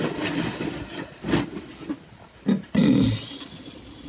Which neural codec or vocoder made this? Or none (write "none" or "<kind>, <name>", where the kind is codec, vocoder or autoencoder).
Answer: none